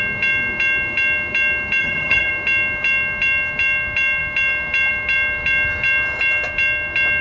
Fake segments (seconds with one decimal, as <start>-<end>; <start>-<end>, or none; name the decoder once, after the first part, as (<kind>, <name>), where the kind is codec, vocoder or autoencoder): 1.8-2.3 (vocoder, HiFi-GAN)